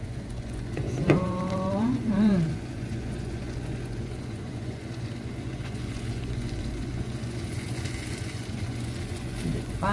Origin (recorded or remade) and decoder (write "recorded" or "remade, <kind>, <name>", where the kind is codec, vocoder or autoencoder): remade, vocoder, Vocos